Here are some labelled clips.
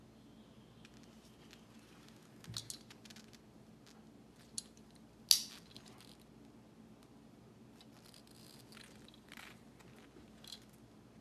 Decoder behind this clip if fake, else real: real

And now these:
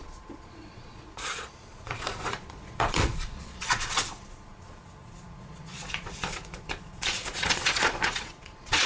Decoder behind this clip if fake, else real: fake, vocoder, Vocos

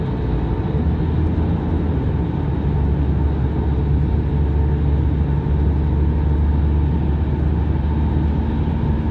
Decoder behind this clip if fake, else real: real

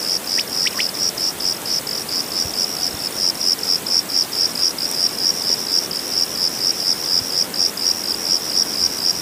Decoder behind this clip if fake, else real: real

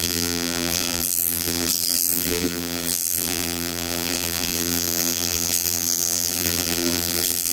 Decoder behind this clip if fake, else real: fake, vocoder, BigVGAN v2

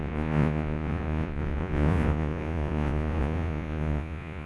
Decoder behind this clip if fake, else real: fake, vocoder, Vocos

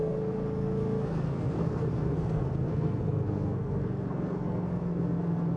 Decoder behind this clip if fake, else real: fake, codec, SNAC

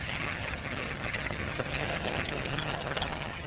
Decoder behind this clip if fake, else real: fake, vocoder, HiFi-GAN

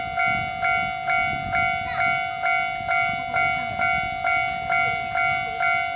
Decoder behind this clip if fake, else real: real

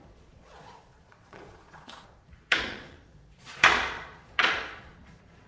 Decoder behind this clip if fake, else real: fake, vocoder, Vocos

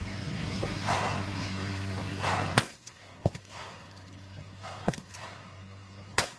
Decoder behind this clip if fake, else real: fake, codec, SNAC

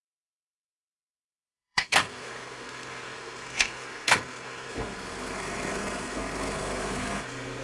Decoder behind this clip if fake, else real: fake, codec, SNAC